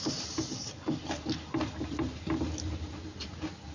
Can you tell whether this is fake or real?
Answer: real